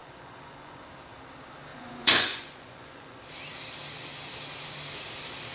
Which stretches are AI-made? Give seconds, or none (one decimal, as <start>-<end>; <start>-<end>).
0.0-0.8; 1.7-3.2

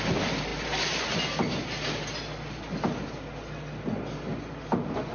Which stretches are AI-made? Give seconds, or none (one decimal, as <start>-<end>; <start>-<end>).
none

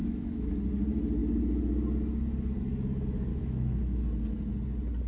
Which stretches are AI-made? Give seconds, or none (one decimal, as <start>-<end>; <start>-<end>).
0.0-0.5; 3.3-4.0